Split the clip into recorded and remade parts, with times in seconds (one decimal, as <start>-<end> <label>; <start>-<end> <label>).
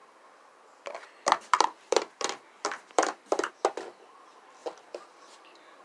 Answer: 0.0-3.5 remade; 3.5-4.6 recorded; 4.6-5.8 remade